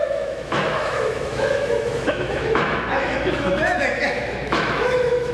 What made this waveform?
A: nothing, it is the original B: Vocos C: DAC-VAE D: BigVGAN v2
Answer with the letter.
C